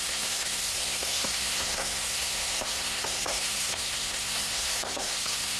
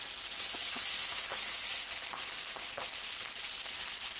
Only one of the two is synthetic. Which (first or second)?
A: first